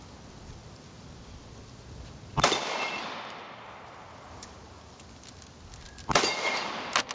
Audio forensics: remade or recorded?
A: recorded